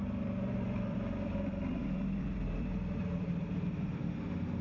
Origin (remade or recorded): remade